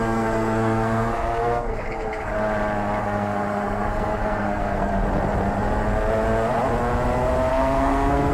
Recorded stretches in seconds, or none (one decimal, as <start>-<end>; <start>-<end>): 2.3-3.0; 4.9-7.5